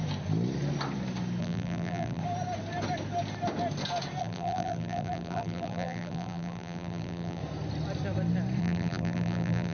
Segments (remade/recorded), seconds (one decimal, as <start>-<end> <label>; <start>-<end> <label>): 0.0-1.4 recorded; 1.4-2.2 remade; 2.2-4.2 recorded; 4.2-7.4 remade; 7.4-8.6 recorded; 8.6-9.7 remade